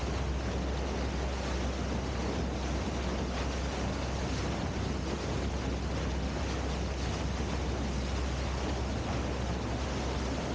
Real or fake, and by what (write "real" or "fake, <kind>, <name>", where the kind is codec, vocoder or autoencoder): real